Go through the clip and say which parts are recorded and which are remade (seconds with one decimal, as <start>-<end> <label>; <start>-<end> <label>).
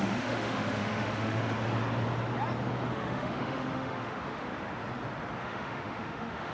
0.0-1.4 remade; 1.4-2.9 recorded; 2.9-4.5 remade; 4.5-5.4 recorded; 5.4-6.5 remade